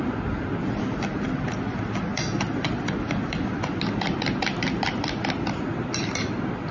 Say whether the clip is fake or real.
real